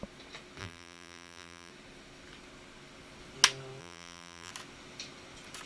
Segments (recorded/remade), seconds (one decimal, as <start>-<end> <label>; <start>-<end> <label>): 0.0-0.6 recorded; 0.6-1.7 remade; 1.7-3.8 recorded; 3.8-4.5 remade; 4.5-5.7 recorded